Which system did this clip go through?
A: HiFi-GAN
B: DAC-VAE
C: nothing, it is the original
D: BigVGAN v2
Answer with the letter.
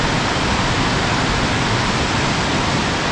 C